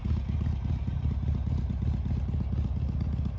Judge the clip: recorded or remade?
recorded